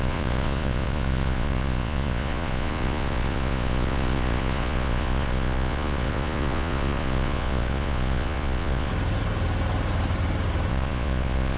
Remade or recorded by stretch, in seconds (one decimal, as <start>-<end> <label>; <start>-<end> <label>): 0.0-8.9 remade; 8.9-10.7 recorded; 10.7-11.6 remade